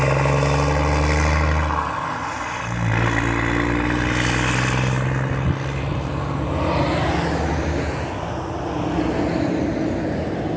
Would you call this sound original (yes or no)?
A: yes